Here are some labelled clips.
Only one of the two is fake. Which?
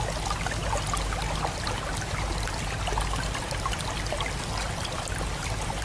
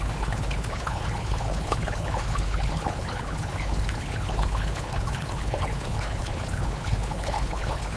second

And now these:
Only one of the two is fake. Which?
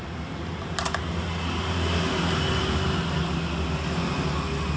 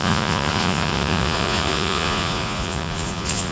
second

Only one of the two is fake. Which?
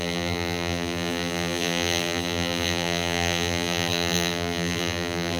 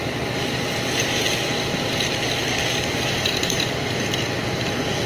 first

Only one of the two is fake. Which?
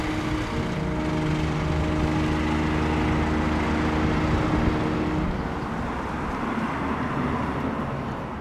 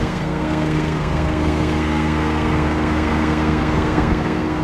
second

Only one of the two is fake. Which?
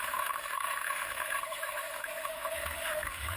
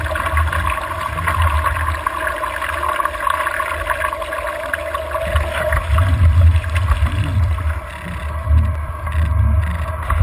first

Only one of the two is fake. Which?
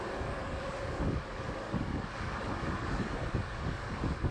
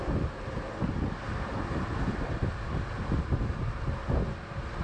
first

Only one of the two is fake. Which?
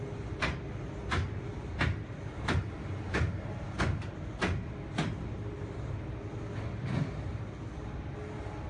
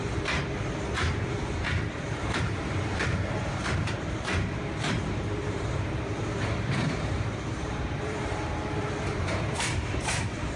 second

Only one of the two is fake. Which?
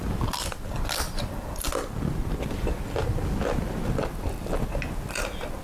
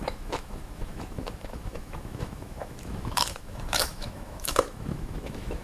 second